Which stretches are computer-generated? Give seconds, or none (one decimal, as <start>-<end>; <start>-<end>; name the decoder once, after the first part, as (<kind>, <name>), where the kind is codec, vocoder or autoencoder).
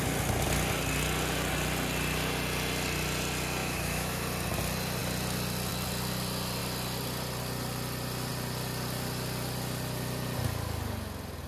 3.6-4.2 (autoencoder, DAC-VAE)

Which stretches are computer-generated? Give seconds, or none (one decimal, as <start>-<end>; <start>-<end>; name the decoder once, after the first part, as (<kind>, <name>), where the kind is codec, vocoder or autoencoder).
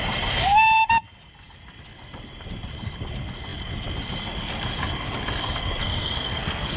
5.8-6.8 (codec, SNAC)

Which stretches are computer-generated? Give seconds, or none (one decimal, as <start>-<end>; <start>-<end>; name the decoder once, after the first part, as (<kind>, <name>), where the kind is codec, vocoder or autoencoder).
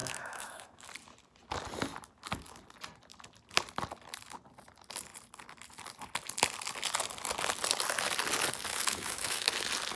0.0-0.9 (autoencoder, DAC-VAE); 8.7-9.5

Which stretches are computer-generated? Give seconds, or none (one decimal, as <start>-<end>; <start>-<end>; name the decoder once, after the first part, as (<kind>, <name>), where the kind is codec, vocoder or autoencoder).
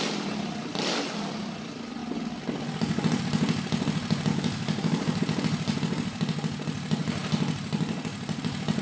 4.3-5.2 (codec, DAC)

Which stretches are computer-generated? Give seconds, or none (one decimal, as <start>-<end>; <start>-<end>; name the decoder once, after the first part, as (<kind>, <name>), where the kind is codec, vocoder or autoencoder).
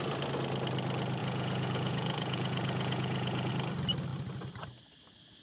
1.2-3.5 (vocoder, Vocos)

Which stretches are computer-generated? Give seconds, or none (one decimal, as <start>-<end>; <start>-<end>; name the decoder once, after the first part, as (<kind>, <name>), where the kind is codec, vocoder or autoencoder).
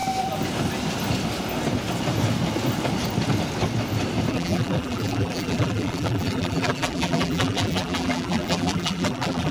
4.3-9.5 (vocoder, BigVGAN v2)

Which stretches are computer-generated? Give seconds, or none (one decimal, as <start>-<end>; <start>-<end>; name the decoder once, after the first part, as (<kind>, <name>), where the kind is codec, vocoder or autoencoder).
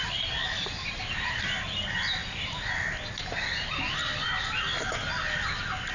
none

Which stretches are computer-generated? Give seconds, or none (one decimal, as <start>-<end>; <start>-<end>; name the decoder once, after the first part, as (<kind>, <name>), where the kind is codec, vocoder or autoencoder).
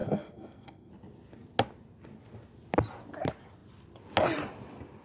0.0-0.9 (codec, SNAC)